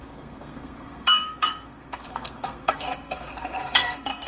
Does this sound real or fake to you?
fake